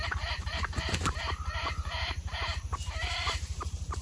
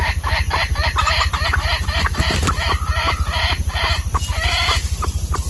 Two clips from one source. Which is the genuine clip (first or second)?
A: second